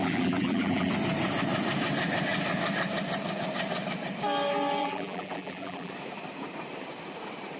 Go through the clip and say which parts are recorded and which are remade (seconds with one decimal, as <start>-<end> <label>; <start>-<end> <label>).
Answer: 0.0-0.9 remade; 0.9-4.8 recorded; 4.8-5.9 remade; 5.9-7.6 recorded